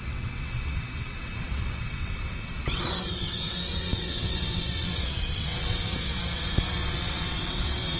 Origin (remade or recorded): remade